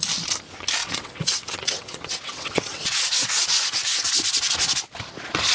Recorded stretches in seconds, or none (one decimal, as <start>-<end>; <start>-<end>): 0.0-0.8; 4.1-5.5